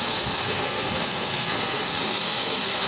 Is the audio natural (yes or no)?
no